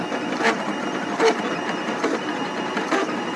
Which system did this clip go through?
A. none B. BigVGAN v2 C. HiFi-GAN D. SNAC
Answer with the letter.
B